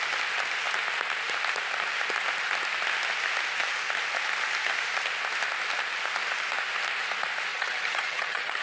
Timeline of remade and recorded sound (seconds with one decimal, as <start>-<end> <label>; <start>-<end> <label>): 0.0-7.5 recorded; 7.5-8.6 remade